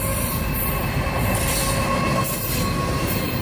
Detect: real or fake real